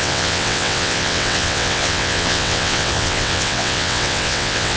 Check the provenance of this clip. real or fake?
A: fake